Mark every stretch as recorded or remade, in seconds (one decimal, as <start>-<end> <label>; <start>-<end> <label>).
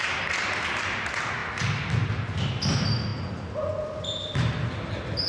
0.0-5.3 recorded